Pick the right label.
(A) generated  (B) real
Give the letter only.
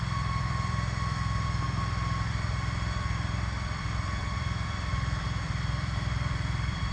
A